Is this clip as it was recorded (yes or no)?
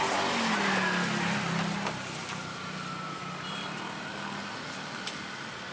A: yes